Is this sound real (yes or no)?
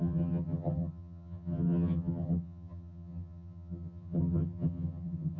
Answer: no